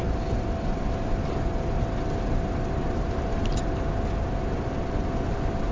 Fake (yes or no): no